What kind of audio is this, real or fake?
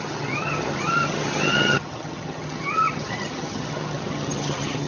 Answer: fake